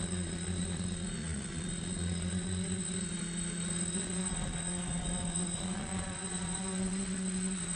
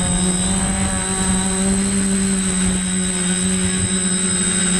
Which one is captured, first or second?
second